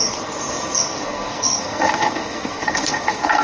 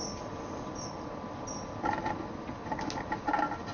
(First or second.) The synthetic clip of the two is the first